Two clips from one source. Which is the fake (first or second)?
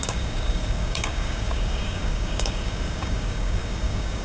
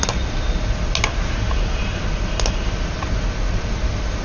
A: first